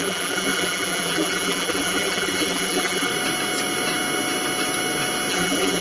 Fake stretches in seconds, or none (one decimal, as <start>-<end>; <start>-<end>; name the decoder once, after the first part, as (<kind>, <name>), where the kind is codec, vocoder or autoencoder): 0.0-3.1 (vocoder, BigVGAN v2); 5.3-5.8